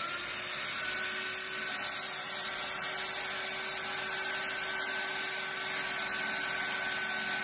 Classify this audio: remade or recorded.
recorded